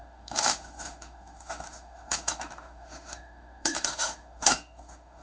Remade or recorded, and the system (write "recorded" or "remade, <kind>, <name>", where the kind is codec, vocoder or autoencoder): remade, autoencoder, DAC-VAE